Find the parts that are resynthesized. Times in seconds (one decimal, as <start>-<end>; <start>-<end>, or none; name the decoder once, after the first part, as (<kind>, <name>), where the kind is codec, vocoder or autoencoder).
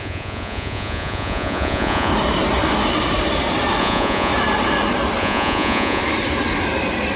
0.0-2.1 (vocoder, Vocos); 3.8-4.3; 5.2-6.0